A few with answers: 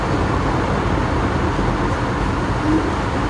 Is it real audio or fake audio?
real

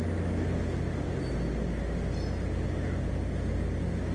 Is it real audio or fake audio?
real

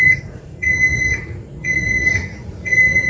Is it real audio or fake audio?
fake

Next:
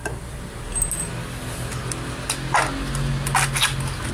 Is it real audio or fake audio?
real